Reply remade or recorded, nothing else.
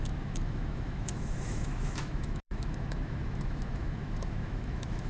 remade